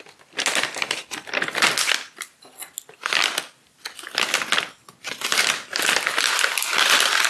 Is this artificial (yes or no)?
no